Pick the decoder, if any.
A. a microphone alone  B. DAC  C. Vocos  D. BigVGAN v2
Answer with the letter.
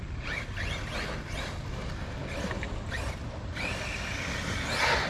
A